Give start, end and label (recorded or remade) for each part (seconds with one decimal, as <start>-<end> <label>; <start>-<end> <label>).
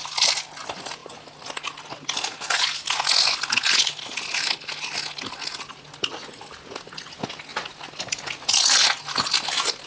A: 0.0-9.9 recorded